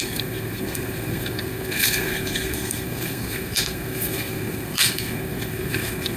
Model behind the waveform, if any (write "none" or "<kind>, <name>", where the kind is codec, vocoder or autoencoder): codec, SNAC